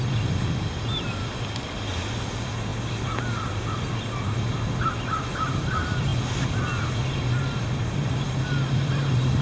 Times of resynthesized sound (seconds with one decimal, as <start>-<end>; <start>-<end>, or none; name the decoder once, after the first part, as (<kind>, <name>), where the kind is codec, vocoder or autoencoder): none